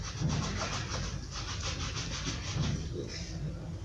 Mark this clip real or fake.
real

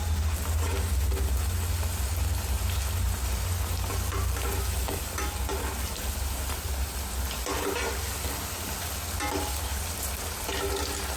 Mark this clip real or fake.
real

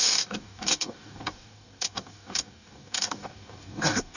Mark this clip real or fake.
fake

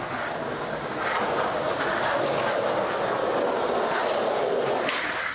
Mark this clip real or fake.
real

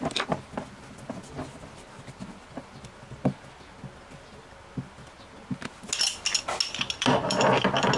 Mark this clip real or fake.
real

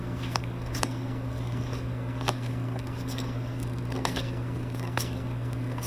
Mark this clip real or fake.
fake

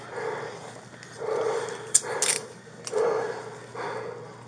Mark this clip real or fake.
real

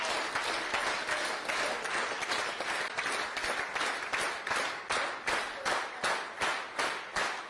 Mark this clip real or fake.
real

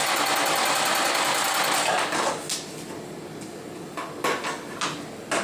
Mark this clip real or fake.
real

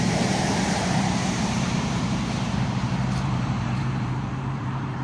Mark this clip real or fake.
fake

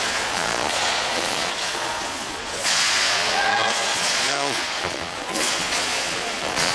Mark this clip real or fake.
fake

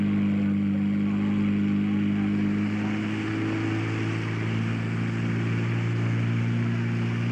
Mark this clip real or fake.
real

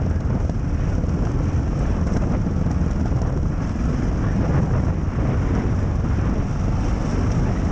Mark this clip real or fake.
real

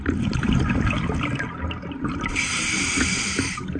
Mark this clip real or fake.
real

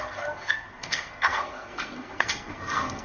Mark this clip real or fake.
fake